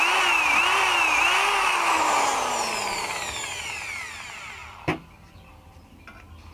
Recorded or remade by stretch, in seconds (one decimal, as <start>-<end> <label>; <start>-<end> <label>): 0.0-6.5 recorded